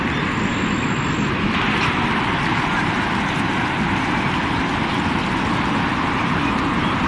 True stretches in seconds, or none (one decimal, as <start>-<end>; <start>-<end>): 0.0-7.1